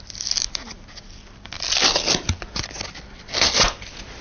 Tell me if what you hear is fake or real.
real